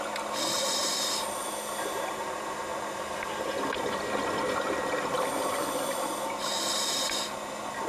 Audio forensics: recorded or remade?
recorded